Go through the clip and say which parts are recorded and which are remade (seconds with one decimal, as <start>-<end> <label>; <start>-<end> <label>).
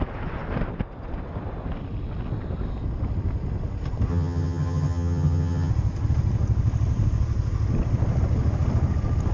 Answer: 0.0-4.1 recorded; 4.1-5.7 remade; 5.7-9.3 recorded